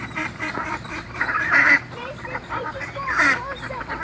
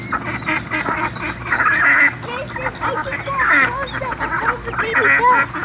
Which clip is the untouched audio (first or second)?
second